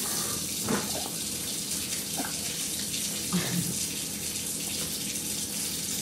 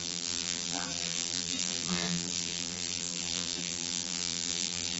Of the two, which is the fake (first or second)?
second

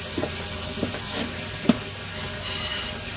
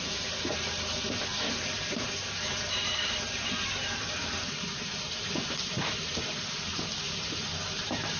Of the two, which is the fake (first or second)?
second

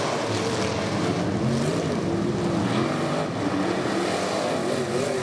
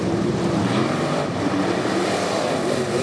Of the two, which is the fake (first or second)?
second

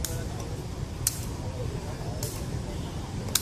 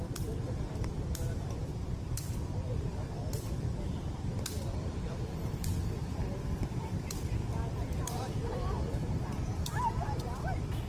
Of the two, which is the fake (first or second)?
second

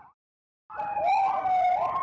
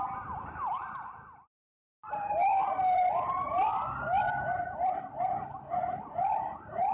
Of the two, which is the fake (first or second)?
second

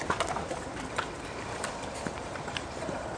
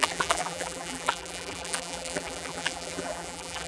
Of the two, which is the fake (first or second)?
second